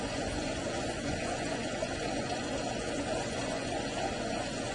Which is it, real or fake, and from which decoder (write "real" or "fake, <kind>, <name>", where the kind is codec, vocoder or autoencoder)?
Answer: fake, vocoder, Vocos